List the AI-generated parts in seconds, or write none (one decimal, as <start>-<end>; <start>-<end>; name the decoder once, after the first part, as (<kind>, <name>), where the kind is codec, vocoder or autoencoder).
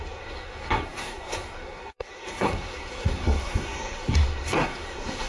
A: 0.0-5.3 (codec, SNAC)